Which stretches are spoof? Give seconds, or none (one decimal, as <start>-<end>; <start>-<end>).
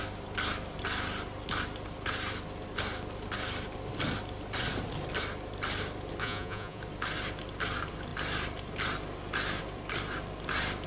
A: 6.2-6.8